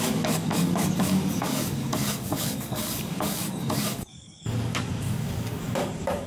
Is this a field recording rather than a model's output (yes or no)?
no